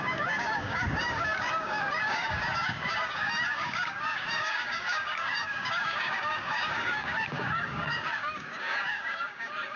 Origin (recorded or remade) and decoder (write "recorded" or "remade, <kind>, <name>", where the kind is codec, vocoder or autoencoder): remade, codec, DAC